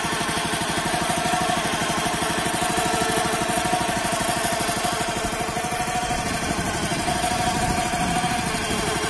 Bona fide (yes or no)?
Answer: yes